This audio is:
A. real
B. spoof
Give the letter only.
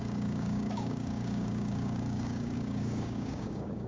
B